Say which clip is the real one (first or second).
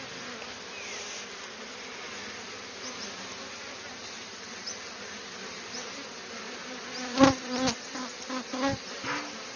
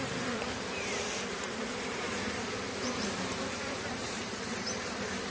first